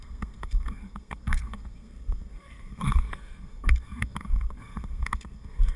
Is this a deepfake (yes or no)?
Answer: yes